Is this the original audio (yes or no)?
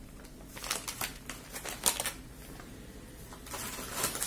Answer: yes